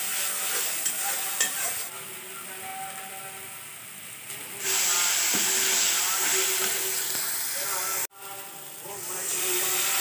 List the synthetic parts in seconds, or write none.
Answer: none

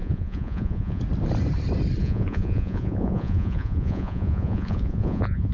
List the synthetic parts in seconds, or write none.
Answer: 0.0-1.0 (vocoder, Vocos); 2.0-5.5

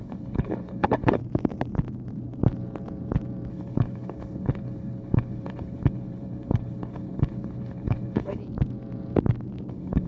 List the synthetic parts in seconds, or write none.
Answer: 0.0-1.2 (codec, HILCodec); 3.5-8.4; 9.7-10.1

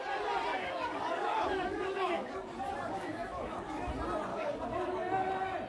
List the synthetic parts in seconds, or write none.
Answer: 0.5-3.9 (codec, DAC); 4.3-5.3